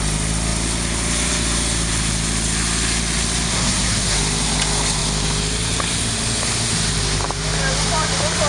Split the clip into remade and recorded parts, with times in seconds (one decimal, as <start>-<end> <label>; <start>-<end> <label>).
0.0-3.5 recorded; 3.5-4.2 remade; 4.2-8.5 recorded